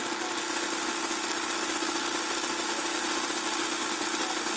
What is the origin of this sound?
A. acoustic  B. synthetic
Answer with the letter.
A